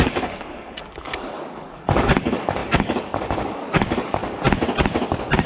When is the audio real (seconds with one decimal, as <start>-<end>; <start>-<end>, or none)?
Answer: 4.2-5.5